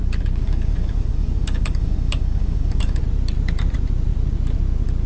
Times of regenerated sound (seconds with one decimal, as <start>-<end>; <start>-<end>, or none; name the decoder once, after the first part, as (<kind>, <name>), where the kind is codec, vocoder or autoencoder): 0.0-3.0 (codec, DAC)